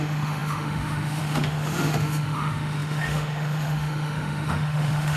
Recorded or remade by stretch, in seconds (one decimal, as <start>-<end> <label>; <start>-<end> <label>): 0.0-5.2 remade